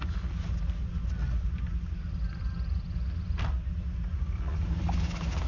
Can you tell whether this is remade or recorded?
recorded